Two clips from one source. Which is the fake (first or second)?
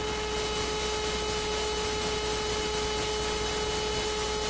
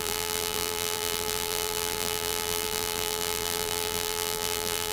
second